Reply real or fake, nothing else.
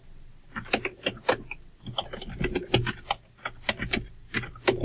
real